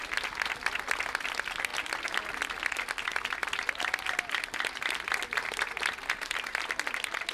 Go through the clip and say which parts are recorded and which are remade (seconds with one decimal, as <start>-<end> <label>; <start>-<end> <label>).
0.0-7.3 recorded